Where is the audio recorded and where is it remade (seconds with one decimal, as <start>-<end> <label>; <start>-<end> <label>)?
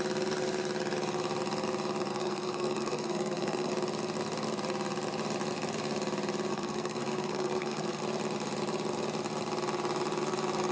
0.0-2.1 recorded; 2.1-3.7 remade; 3.7-6.5 recorded; 6.5-8.0 remade; 8.0-10.7 recorded